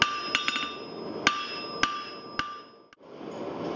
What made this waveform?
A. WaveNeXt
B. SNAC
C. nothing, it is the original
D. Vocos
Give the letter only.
C